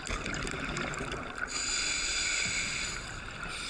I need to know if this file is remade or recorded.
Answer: recorded